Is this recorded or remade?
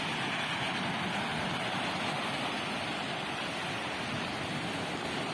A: recorded